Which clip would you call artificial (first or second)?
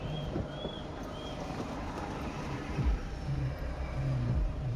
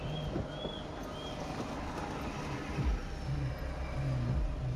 first